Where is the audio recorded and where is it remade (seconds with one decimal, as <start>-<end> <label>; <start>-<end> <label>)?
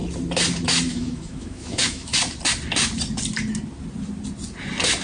0.0-0.9 recorded; 0.9-2.1 remade; 2.1-5.0 recorded